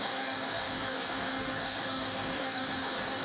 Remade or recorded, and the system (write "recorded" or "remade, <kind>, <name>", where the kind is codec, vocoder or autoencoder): remade, codec, DAC